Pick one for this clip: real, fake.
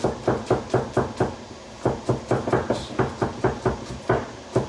real